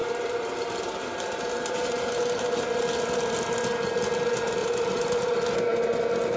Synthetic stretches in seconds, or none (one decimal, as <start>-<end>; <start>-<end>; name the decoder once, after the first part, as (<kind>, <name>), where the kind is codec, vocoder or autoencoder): 0.0-2.8 (vocoder, BigVGAN v2); 4.6-5.3